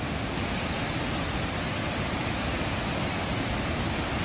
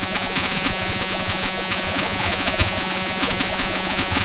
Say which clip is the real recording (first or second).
first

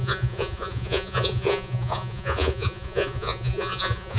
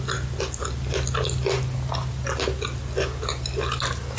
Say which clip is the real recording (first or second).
second